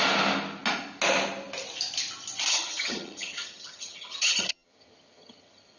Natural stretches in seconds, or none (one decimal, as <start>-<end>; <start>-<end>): 0.0-2.5